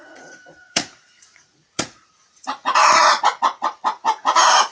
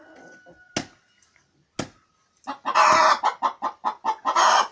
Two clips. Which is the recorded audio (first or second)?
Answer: second